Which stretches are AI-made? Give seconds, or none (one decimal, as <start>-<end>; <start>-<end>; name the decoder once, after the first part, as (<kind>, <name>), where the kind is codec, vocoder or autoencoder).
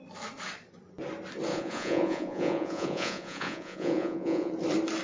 1.5-4.5 (vocoder, Vocos)